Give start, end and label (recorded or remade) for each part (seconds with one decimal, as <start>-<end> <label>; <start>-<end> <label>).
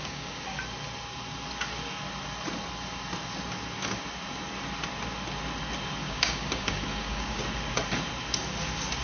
0.0-0.6 remade; 0.6-6.0 recorded; 6.0-7.4 remade; 7.4-9.0 recorded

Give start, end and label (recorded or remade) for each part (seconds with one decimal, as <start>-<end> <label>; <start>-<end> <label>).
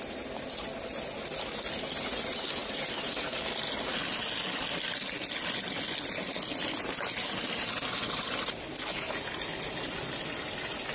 0.0-10.9 recorded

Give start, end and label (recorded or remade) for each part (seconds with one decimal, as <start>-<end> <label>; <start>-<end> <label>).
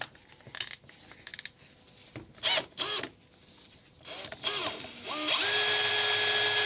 0.0-6.7 recorded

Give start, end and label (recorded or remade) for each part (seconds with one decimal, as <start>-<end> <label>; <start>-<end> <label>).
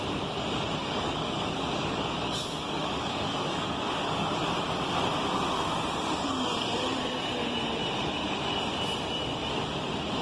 0.0-0.8 recorded; 0.8-4.3 remade; 4.3-10.2 recorded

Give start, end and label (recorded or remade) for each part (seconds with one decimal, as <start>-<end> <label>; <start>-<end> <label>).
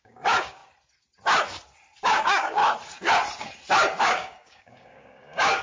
0.0-0.6 remade; 0.6-2.0 recorded; 2.0-2.6 remade; 2.6-4.0 recorded; 4.0-5.6 remade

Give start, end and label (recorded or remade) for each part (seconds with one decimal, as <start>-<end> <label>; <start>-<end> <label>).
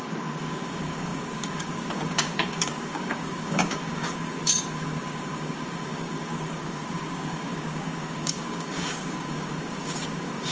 0.0-10.5 remade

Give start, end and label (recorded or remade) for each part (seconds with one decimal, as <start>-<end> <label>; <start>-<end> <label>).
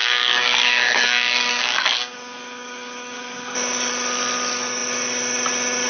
0.0-3.5 remade; 3.5-5.9 recorded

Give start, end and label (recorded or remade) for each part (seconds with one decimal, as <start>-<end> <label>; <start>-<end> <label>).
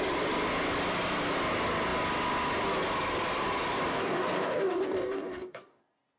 0.0-3.9 recorded; 3.9-5.8 remade; 5.8-6.2 recorded